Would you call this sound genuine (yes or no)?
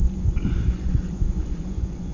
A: no